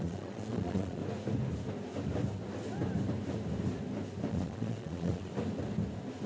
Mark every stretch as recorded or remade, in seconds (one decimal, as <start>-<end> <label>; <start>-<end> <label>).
0.0-1.0 remade; 1.0-4.3 recorded; 4.3-5.3 remade; 5.3-6.3 recorded

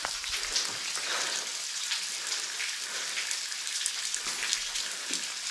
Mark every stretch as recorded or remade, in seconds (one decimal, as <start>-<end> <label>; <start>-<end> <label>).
0.0-5.5 recorded

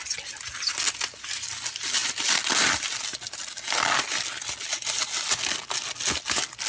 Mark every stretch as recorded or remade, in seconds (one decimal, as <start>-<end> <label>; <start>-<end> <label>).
0.0-2.0 recorded; 2.0-2.8 remade; 2.8-6.7 recorded

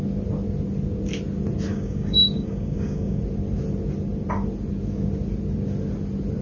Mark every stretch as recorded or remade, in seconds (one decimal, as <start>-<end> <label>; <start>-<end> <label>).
0.0-1.7 recorded; 1.7-3.2 remade; 3.2-6.4 recorded

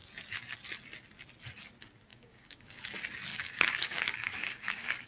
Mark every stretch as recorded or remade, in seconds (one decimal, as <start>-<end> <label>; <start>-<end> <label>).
0.0-2.1 recorded; 2.1-2.8 remade; 2.8-3.3 recorded; 3.3-5.1 remade